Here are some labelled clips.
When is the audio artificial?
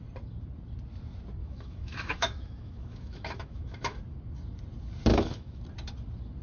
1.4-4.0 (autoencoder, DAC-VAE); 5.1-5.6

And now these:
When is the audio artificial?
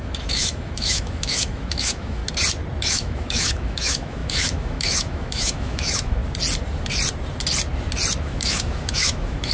0.0-2.2 (autoencoder, DAC-VAE); 2.8-6.2; 8.2-9.5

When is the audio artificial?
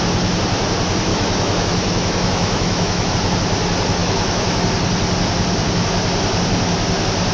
1.1-3.1 (autoencoder, DAC-VAE); 4.0-4.6